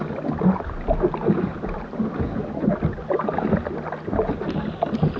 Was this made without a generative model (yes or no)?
yes